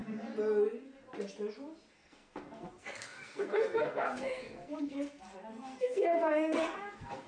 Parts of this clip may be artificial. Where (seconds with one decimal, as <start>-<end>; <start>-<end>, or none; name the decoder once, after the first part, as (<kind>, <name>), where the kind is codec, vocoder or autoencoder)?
1.9-7.3 (codec, SNAC)